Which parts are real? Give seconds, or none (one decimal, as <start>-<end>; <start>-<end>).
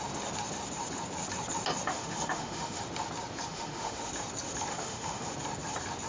0.0-1.9; 2.8-3.5; 4.1-4.7; 5.3-6.1